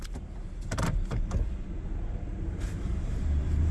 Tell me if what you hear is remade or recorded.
remade